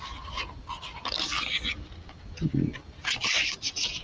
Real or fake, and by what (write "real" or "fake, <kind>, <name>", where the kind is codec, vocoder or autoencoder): real